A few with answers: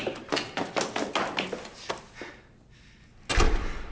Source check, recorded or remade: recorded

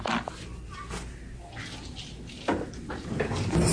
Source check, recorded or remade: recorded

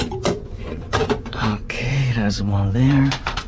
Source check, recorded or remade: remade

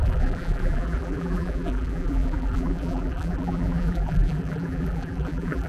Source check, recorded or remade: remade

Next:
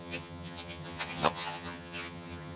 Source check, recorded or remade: remade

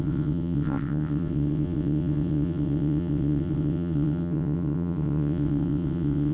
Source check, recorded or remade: remade